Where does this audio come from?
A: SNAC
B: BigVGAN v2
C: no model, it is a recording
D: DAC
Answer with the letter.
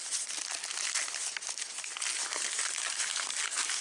C